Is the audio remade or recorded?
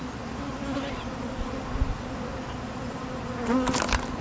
recorded